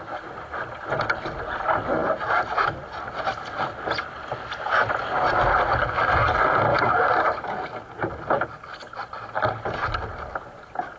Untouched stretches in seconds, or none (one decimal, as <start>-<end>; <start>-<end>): 0.0-11.0